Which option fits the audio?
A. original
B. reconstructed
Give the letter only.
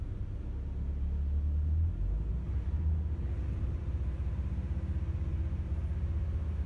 A